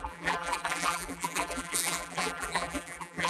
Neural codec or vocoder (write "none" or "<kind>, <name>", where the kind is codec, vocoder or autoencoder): vocoder, BigVGAN v2